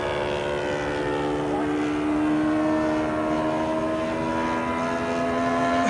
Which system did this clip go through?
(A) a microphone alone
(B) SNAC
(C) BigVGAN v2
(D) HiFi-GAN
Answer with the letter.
A